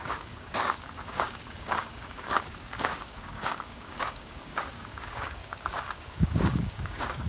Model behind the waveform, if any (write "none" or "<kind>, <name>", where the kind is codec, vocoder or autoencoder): codec, DAC